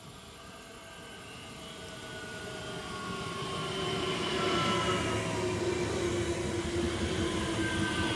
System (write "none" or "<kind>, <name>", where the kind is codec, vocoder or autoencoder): none